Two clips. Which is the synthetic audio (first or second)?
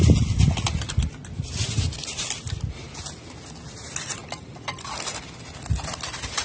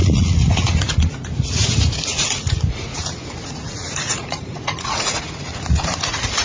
second